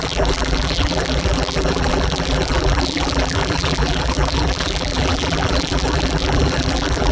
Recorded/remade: remade